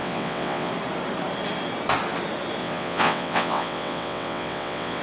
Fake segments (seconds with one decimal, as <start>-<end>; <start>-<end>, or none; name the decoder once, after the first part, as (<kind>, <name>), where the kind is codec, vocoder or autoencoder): 0.0-0.7 (vocoder, WaveNeXt); 2.6-5.0

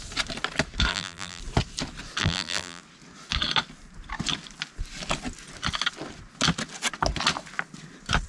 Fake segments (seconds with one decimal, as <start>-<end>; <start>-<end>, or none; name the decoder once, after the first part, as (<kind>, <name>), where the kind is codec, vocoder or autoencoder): 0.9-1.4 (vocoder, BigVGAN v2); 2.2-2.8